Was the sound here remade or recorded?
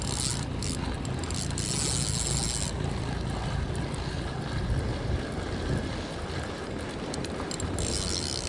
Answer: recorded